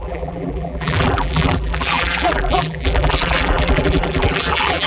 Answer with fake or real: fake